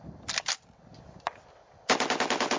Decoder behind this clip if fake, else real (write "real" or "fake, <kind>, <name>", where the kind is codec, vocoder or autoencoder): real